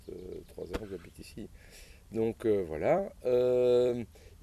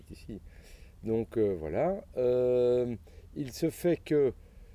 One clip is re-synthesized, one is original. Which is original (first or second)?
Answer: second